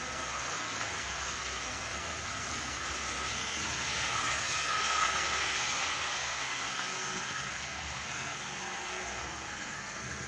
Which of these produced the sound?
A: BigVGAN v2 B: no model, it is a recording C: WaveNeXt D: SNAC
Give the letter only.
D